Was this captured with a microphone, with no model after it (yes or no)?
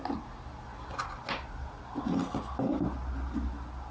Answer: yes